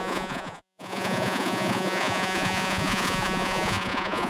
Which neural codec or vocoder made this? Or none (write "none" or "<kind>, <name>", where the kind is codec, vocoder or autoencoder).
vocoder, Vocos